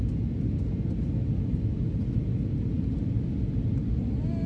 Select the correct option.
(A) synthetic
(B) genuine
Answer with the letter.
B